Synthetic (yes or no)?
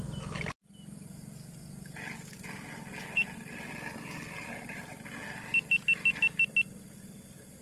no